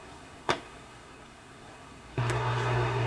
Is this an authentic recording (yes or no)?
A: no